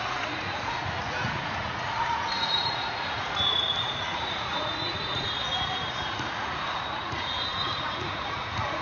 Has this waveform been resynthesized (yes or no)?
yes